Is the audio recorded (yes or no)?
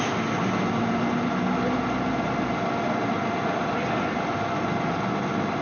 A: yes